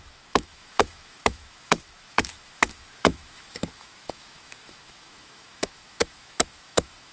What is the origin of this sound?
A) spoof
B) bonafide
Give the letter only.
A